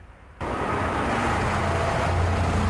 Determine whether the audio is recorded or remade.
remade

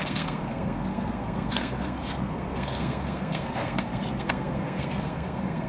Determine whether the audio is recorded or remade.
remade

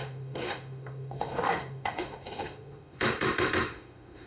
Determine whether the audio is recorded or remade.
remade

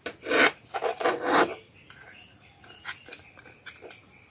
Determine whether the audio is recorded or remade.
recorded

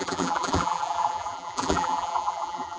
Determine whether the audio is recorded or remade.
remade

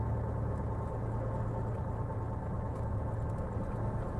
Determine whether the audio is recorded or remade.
recorded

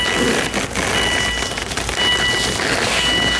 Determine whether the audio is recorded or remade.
recorded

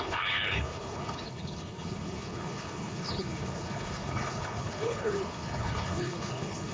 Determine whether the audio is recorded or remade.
remade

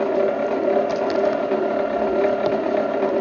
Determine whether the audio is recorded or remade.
recorded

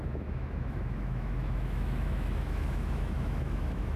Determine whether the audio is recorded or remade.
remade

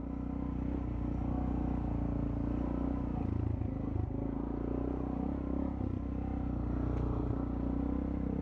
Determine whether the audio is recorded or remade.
recorded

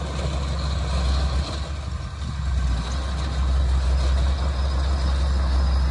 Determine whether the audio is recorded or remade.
recorded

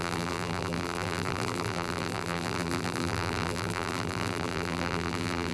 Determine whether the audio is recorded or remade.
remade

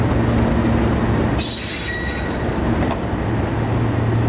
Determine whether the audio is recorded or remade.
recorded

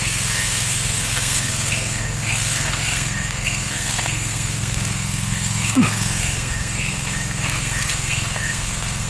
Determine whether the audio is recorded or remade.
remade